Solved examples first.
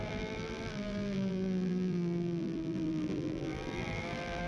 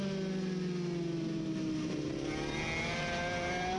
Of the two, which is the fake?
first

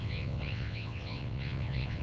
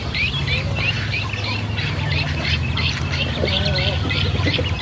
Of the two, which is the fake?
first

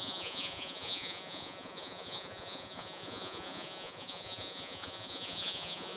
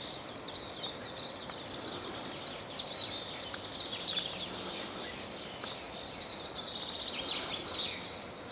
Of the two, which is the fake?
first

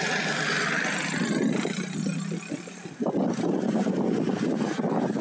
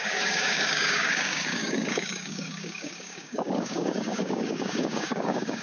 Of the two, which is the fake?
second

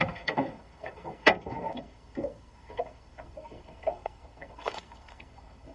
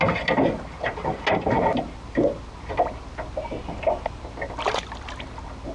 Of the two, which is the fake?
first